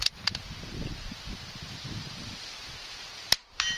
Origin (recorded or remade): recorded